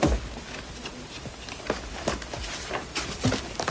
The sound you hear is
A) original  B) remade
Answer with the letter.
A